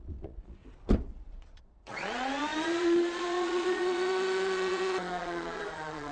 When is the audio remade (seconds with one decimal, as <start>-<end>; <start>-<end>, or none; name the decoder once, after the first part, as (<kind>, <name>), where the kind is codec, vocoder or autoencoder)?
0.0-0.6 (vocoder, Vocos); 1.1-6.1